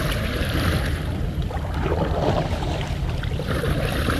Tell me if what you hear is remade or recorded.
remade